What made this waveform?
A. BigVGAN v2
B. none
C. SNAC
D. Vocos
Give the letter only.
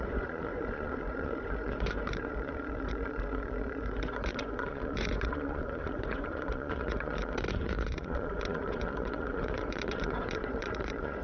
D